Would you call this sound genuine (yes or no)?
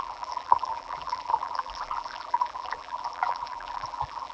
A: no